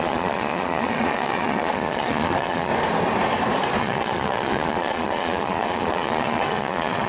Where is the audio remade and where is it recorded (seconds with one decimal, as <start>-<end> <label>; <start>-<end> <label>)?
0.0-2.7 remade; 2.7-3.8 recorded; 3.8-7.1 remade